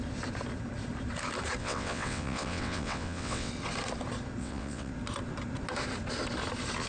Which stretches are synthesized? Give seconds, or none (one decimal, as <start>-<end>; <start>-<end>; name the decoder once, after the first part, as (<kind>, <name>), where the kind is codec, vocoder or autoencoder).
1.6-3.5 (vocoder, WaveNeXt); 4.4-4.9